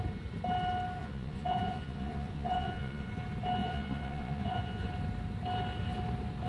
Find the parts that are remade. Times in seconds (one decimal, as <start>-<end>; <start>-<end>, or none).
1.0-3.1; 3.6-4.9